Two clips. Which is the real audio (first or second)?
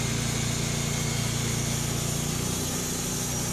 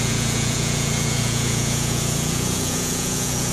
first